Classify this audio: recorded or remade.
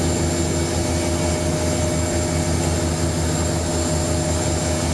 recorded